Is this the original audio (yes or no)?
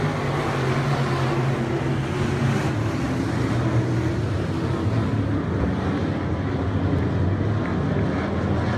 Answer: yes